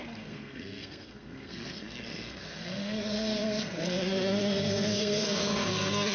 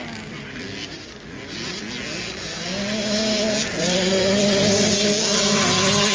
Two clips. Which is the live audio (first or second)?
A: second